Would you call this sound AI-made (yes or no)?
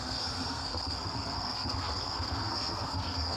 yes